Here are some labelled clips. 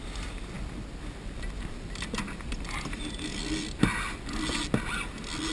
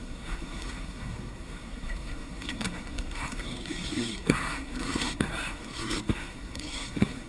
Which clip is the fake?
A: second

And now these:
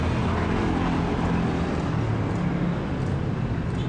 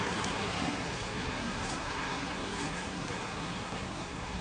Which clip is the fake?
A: second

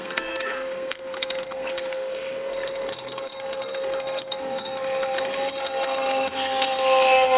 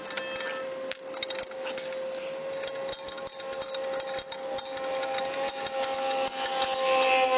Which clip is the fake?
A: first